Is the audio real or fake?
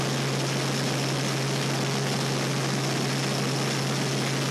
real